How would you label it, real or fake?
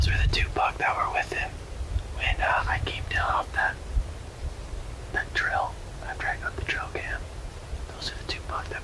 real